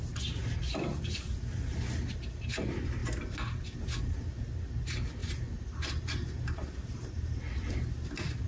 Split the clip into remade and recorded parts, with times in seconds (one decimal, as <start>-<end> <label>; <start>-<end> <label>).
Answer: 0.0-8.5 recorded